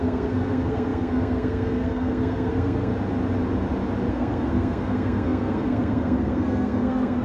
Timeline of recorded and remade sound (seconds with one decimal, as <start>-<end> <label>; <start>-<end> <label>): 0.0-2.9 remade; 2.9-4.1 recorded; 4.1-7.2 remade